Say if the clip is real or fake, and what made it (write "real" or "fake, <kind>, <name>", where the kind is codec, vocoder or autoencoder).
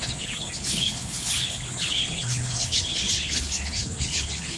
fake, codec, HILCodec